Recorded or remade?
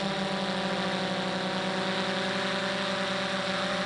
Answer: recorded